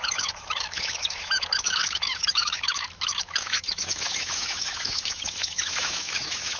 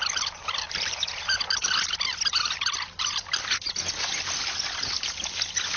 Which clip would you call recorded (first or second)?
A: second